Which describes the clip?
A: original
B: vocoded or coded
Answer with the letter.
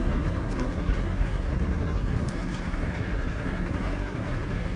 B